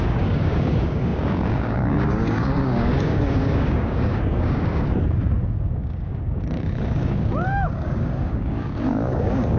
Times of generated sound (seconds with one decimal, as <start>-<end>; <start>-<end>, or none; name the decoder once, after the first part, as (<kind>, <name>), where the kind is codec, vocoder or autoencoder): 0.0-9.6 (codec, DAC)